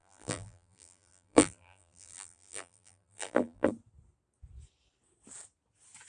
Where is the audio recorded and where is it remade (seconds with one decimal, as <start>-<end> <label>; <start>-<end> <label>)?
0.0-3.7 remade; 3.7-6.1 recorded